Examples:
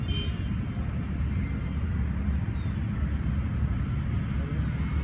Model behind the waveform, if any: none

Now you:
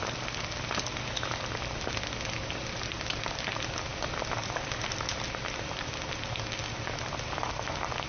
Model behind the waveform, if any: none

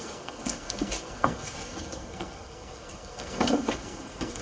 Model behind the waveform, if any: codec, SNAC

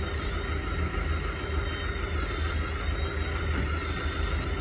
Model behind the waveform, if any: none